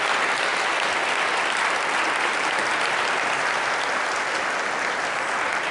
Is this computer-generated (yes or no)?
no